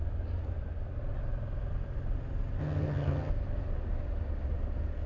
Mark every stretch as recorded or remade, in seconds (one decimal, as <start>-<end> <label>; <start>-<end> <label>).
0.0-2.6 recorded; 2.6-3.3 remade; 3.3-5.1 recorded